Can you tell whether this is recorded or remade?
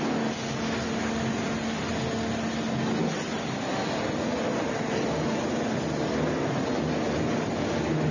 recorded